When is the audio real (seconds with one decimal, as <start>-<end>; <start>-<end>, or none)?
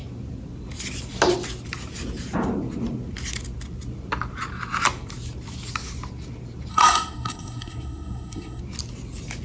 0.0-6.7; 8.6-9.4